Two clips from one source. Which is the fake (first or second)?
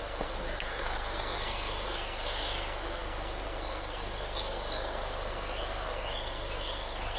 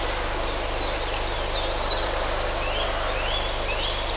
first